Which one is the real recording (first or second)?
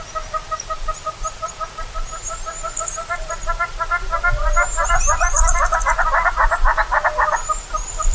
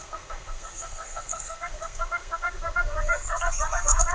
first